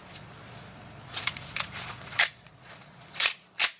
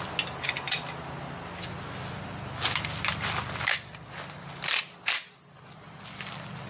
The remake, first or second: first